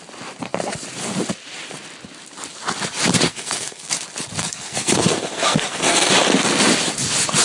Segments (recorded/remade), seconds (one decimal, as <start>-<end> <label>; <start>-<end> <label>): 0.0-3.3 recorded; 3.3-3.9 remade; 3.9-4.4 recorded; 4.4-6.1 remade; 6.1-7.4 recorded